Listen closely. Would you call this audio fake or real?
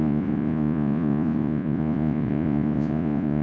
fake